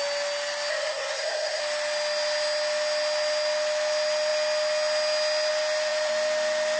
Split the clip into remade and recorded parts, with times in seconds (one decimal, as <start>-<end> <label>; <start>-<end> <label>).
0.0-0.7 recorded; 0.7-1.6 remade; 1.6-6.8 recorded